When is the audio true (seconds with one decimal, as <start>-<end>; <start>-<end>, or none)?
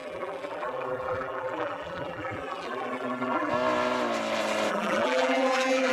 3.5-4.7